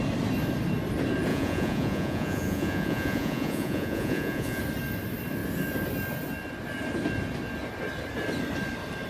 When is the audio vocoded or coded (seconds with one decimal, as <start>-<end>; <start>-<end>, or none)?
1.3-4.6